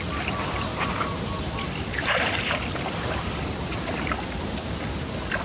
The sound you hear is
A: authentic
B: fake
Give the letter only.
B